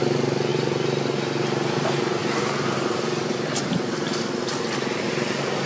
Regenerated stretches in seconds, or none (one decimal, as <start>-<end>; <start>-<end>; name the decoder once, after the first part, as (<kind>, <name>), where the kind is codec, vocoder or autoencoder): none